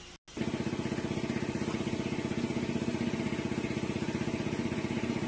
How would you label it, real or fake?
real